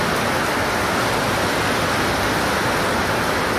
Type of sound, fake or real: real